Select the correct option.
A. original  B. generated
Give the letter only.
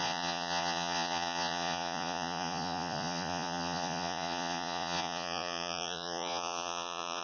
B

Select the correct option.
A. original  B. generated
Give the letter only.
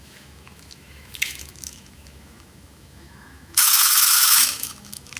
B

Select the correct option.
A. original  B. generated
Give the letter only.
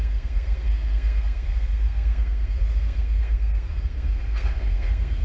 B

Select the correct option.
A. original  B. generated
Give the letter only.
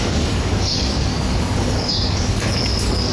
B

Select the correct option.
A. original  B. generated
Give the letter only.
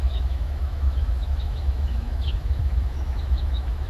B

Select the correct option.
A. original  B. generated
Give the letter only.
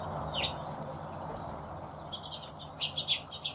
A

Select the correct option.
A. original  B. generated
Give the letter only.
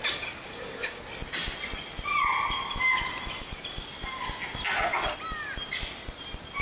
A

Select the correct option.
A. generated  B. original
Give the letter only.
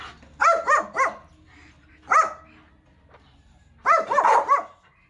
B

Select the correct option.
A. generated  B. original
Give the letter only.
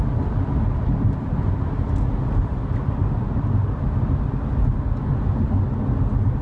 B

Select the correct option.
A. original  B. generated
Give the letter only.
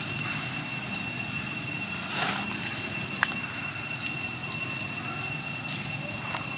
A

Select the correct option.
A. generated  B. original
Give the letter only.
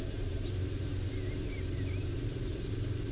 A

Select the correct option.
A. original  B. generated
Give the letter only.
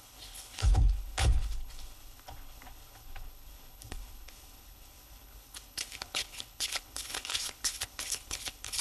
B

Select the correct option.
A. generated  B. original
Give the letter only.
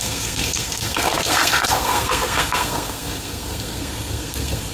A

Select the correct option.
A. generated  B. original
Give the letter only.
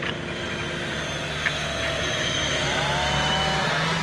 A